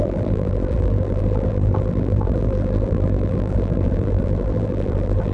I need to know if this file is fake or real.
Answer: fake